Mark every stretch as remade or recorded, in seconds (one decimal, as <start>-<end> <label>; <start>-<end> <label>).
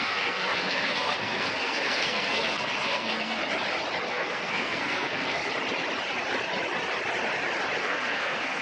0.0-3.4 remade; 3.4-4.1 recorded; 4.1-5.4 remade; 5.4-7.8 recorded; 7.8-8.6 remade